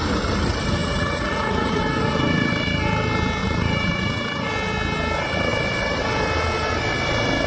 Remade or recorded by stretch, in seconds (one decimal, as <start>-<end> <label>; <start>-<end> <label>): 0.0-0.8 recorded; 0.8-1.8 remade; 1.8-3.4 recorded; 3.4-4.5 remade; 4.5-7.5 recorded